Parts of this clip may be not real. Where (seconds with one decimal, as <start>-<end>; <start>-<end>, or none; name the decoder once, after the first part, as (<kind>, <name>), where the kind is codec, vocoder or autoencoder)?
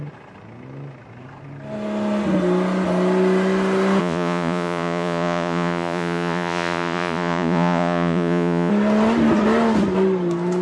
4.0-8.7 (vocoder, Vocos)